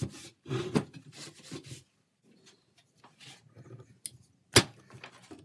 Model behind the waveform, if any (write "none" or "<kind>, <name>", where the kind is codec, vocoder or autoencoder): none